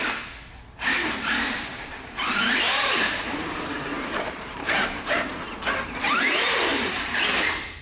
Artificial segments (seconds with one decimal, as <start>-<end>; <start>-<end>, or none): 1.7-5.3; 6.7-7.3